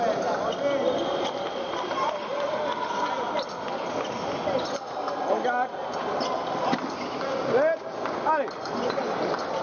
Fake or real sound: real